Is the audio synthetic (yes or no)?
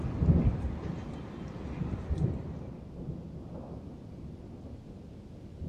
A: no